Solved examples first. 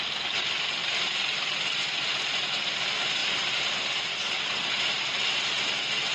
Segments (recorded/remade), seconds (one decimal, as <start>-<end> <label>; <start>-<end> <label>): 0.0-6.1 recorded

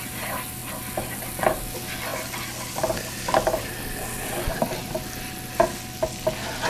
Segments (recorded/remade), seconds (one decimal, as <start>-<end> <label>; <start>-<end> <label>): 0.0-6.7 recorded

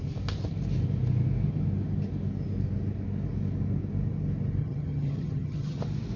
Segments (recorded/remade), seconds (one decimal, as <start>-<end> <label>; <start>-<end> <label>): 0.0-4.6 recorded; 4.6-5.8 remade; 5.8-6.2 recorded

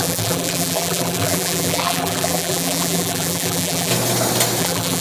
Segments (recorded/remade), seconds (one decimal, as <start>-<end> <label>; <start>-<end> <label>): 0.0-3.9 remade; 3.9-4.6 recorded; 4.6-5.0 remade